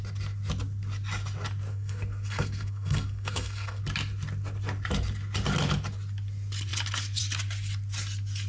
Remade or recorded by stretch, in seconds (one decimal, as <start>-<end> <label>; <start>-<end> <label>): 0.0-1.7 recorded; 1.7-3.8 remade; 3.8-8.5 recorded